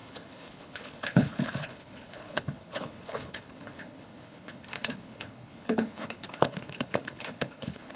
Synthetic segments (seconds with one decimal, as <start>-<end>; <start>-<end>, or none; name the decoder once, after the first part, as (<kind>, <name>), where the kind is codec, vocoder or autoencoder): 0.0-8.0 (codec, HILCodec)